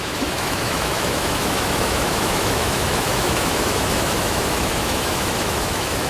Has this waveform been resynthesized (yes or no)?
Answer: yes